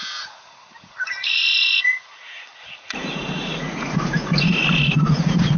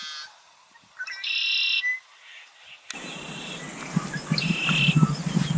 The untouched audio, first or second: second